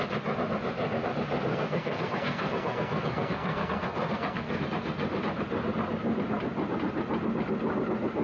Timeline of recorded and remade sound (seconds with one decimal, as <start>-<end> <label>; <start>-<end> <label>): 0.0-1.5 recorded; 1.5-4.6 remade; 4.6-8.2 recorded